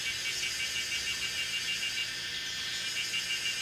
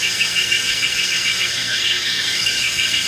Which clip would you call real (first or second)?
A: first